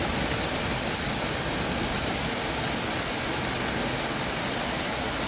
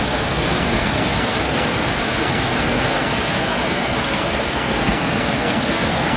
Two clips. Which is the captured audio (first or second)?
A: first